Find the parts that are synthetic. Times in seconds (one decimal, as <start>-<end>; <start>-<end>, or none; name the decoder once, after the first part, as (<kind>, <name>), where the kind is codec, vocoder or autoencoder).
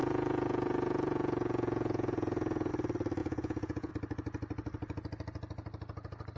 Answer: 0.0-2.7 (vocoder, Vocos); 3.2-3.9